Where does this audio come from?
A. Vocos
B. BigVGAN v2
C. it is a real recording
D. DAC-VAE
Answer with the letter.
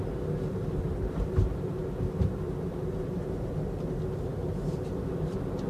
C